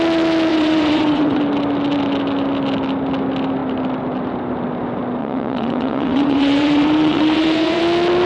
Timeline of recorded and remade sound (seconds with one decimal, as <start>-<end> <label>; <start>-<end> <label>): 0.0-0.5 recorded; 0.5-1.4 remade; 1.4-5.2 recorded; 5.2-7.8 remade; 7.8-8.3 recorded